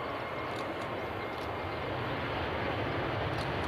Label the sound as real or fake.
real